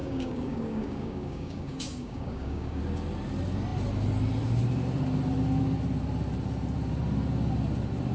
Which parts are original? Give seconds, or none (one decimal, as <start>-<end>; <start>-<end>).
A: 2.8-8.1